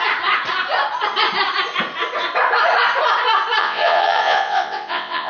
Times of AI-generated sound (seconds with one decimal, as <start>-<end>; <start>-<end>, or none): 3.6-5.3

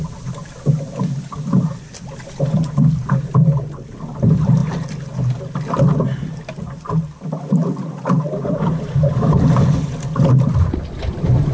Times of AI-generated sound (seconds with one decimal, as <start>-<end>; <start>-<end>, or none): none

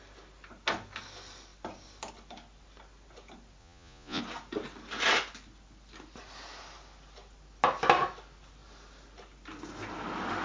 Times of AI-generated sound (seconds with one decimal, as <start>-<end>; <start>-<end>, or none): 3.6-4.2

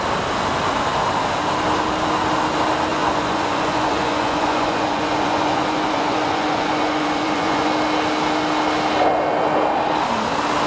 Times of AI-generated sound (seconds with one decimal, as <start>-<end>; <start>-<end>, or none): 2.9-7.7

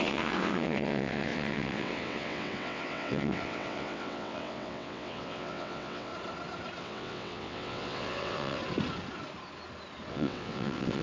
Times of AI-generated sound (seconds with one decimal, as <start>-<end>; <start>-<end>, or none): 0.0-6.1; 6.8-8.6; 10.1-11.0

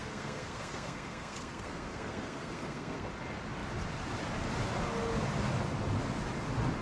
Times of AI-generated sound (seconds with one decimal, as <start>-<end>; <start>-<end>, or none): 0.0-3.1

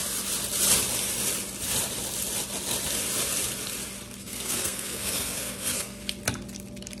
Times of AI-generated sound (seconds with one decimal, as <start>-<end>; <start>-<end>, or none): 4.2-6.0